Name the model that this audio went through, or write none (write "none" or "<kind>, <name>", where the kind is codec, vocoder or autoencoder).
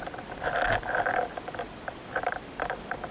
none